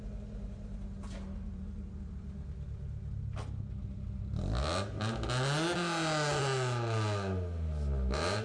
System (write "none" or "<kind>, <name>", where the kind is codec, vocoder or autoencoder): none